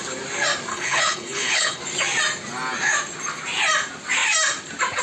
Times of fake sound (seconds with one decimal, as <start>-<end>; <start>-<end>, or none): 0.7-1.8